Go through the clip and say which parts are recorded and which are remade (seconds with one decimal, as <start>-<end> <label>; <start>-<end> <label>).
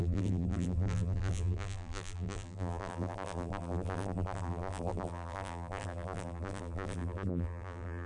0.0-8.1 remade